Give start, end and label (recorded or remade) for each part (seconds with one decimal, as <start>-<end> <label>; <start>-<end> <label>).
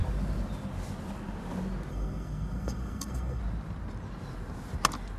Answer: 0.0-1.9 recorded; 1.9-3.4 remade; 3.4-5.2 recorded